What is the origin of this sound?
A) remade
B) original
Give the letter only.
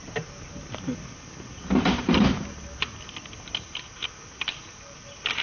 B